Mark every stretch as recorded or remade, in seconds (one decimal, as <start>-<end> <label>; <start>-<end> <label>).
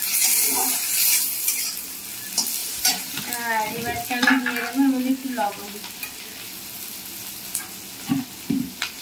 0.0-2.6 recorded; 2.6-3.2 remade; 3.2-5.2 recorded; 5.2-5.8 remade; 5.8-9.0 recorded